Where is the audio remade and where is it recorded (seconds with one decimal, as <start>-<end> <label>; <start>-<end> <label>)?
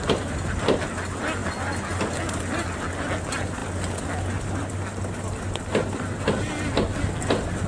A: 0.0-7.7 recorded